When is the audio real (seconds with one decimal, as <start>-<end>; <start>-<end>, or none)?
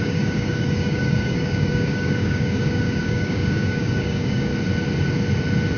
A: 4.5-5.8